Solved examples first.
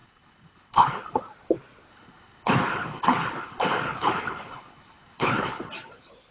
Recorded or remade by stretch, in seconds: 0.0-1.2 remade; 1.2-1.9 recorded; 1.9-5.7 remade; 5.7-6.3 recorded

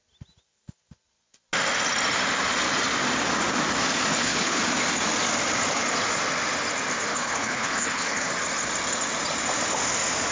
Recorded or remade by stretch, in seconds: 0.0-4.1 recorded; 4.1-4.6 remade; 4.6-7.1 recorded; 7.1-8.3 remade; 8.3-10.3 recorded

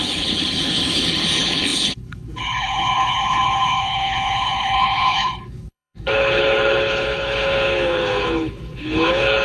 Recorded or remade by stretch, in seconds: 0.0-9.4 remade